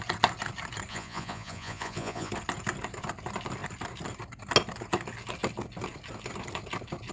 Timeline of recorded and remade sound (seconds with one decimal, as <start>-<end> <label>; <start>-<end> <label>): 0.0-0.9 recorded; 0.9-2.3 remade; 2.3-7.1 recorded